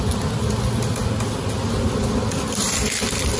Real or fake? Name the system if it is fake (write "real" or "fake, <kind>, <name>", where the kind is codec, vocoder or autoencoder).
real